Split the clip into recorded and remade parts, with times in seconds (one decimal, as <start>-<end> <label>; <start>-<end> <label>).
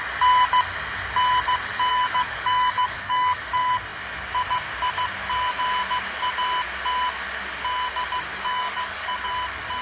0.0-1.9 recorded; 1.9-3.4 remade; 3.4-8.3 recorded; 8.3-9.3 remade; 9.3-9.8 recorded